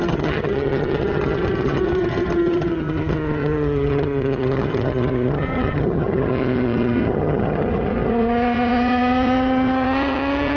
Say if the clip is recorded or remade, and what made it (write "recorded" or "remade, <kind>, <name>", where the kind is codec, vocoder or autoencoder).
remade, vocoder, HiFi-GAN